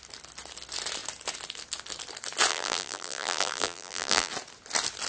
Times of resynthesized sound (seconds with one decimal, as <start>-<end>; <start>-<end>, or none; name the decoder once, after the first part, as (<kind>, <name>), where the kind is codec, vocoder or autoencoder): 2.5-4.3 (vocoder, BigVGAN v2)